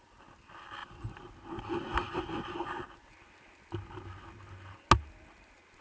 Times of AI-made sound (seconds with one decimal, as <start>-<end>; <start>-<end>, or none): none